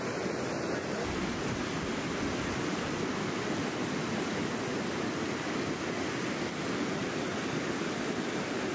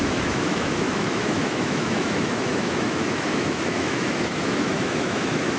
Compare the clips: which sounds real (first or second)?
first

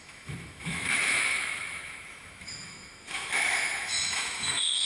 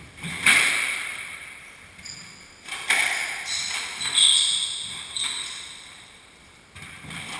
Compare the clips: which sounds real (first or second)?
second